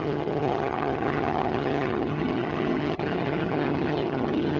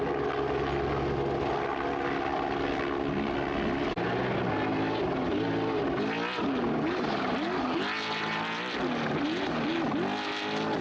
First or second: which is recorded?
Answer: second